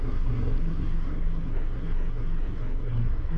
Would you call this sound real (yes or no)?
no